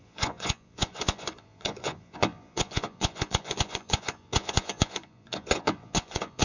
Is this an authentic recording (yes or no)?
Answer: no